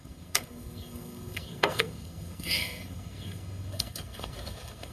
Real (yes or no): no